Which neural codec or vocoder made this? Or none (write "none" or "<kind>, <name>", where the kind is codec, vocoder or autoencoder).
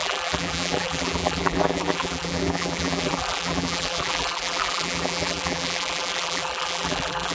vocoder, BigVGAN v2